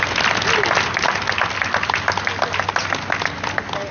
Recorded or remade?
recorded